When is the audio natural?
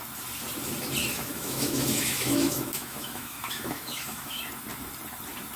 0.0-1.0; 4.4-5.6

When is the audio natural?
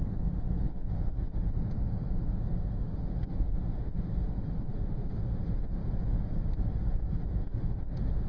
5.8-7.1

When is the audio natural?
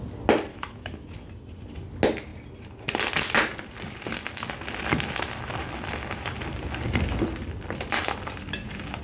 0.0-0.5; 1.3-9.0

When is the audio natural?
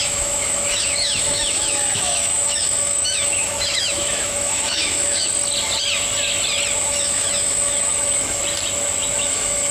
5.3-6.8; 8.4-9.2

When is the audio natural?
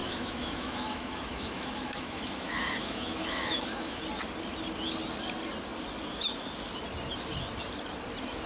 4.0-8.5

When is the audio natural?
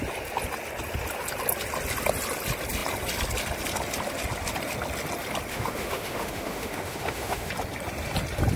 0.0-5.5; 7.5-8.6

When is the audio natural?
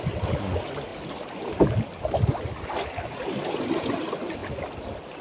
0.0-5.2